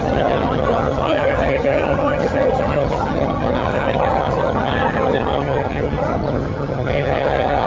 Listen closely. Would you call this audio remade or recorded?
remade